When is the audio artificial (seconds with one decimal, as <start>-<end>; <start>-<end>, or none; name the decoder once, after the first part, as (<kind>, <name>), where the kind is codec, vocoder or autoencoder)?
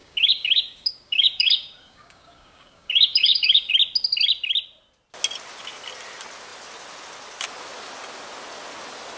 0.0-3.7 (codec, DAC)